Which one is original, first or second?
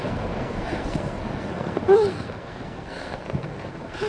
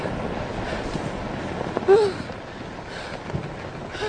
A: second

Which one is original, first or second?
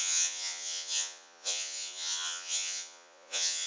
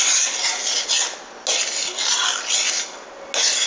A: second